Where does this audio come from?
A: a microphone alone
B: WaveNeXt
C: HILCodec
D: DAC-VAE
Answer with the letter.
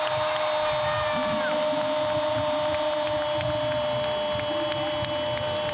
A